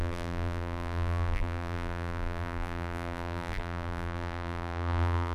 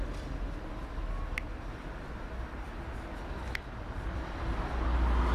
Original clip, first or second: second